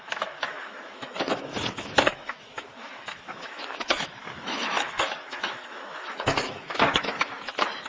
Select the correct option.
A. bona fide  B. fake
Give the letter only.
B